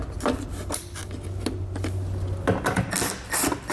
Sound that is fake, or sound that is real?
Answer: real